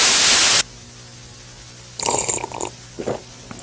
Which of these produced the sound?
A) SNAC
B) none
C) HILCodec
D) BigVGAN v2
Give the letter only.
B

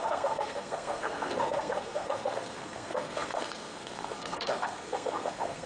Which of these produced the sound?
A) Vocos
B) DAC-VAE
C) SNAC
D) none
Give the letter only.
C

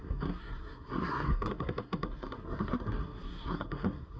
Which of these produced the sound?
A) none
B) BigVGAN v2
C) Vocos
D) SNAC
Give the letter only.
D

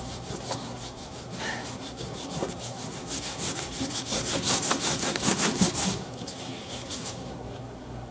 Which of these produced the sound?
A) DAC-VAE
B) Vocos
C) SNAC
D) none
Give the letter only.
C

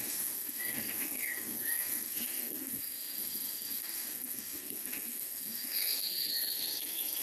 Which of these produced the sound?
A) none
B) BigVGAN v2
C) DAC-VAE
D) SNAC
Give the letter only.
D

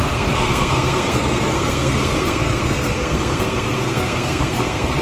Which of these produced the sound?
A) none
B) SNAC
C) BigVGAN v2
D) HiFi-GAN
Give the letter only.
B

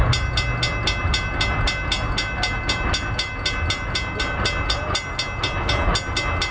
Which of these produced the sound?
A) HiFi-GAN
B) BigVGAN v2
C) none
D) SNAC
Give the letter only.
C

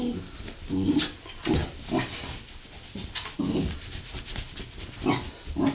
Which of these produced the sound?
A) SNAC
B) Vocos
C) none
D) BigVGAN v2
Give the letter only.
C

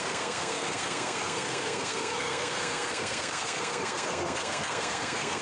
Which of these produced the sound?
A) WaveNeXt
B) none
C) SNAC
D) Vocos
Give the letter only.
C